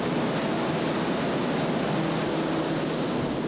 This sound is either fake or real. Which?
real